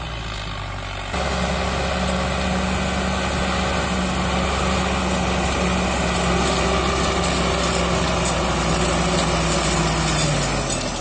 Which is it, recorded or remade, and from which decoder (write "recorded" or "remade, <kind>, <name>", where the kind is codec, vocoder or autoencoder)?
recorded